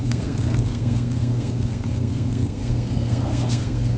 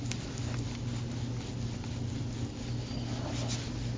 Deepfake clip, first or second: first